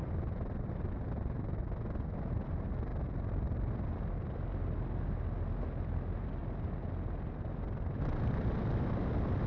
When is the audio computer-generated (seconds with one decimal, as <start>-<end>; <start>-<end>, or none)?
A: none